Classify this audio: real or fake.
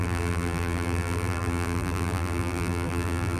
fake